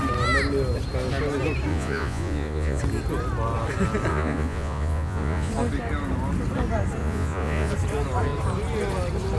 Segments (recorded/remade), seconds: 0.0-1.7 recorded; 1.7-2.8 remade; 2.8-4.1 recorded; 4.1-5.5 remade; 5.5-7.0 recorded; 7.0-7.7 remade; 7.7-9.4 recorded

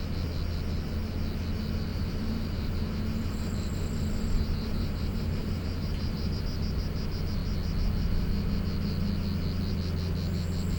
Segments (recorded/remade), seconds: 0.0-1.9 recorded; 1.9-6.4 remade; 6.4-10.8 recorded

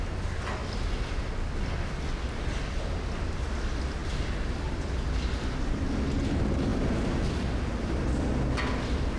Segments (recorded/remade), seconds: 0.0-6.7 recorded; 6.7-8.4 remade; 8.4-9.2 recorded